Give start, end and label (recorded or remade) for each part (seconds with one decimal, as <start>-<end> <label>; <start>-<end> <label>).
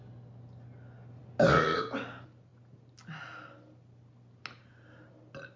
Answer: 0.0-5.6 recorded